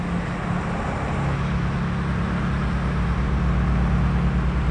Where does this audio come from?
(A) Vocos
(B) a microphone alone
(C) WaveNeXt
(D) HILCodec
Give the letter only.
B